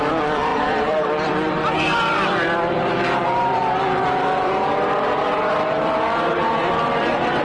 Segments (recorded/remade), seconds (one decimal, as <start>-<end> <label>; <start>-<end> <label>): 0.0-7.4 remade